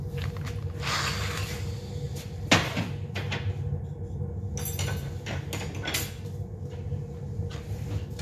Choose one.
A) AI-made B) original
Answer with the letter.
B